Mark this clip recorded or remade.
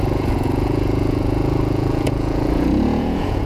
remade